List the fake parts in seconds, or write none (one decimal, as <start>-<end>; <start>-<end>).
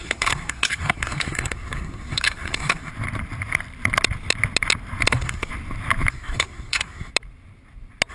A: 0.0-2.9; 5.1-5.5; 6.1-7.1